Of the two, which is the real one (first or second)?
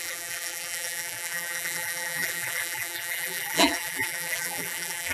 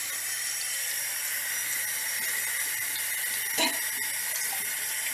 second